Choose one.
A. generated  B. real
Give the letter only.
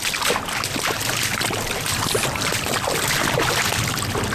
B